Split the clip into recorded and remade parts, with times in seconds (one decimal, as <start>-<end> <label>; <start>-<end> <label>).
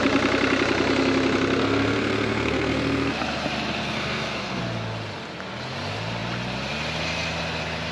0.0-1.6 recorded; 1.6-3.2 remade; 3.2-3.8 recorded; 3.8-4.6 remade; 4.6-7.9 recorded